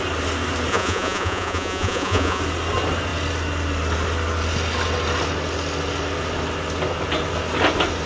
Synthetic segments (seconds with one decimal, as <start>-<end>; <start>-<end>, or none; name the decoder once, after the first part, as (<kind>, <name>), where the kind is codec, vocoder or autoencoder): 0.7-2.4 (vocoder, Vocos)